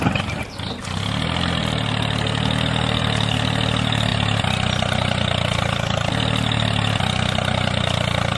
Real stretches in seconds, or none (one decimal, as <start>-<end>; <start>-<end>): 0.0-8.4